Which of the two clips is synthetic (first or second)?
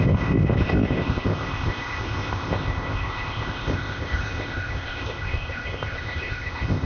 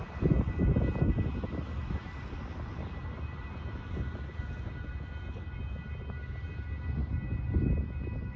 first